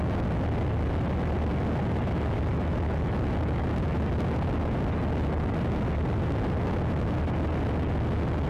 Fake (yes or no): no